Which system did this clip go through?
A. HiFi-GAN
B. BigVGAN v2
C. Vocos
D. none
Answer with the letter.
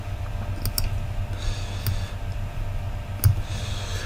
D